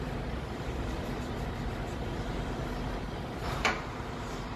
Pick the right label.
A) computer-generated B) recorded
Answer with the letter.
A